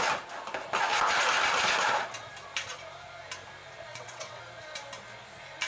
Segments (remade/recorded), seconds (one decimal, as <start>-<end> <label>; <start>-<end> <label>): 0.0-3.9 recorded; 3.9-4.4 remade; 4.4-5.7 recorded